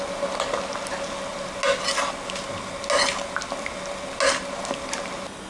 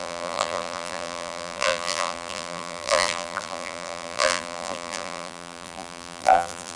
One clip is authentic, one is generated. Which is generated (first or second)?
second